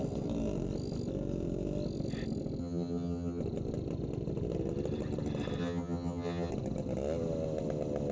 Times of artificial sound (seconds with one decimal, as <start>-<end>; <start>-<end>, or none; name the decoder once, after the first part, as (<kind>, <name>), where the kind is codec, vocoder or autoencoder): 2.6-3.4 (vocoder, HiFi-GAN); 5.6-6.5